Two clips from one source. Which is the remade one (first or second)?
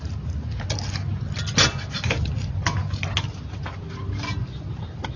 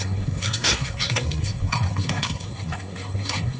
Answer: second